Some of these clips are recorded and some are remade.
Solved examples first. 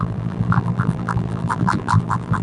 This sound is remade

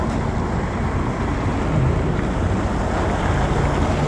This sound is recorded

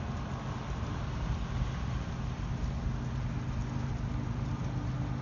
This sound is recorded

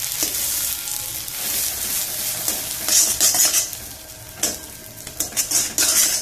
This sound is recorded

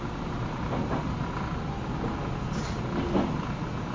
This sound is recorded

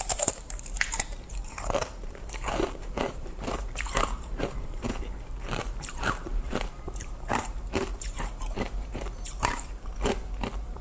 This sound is remade